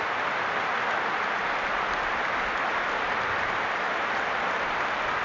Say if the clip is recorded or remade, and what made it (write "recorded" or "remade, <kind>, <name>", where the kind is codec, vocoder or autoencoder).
recorded